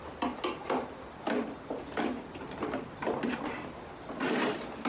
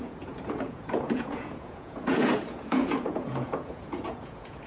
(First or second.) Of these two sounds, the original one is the first